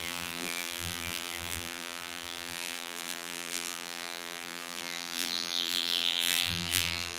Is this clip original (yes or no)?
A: no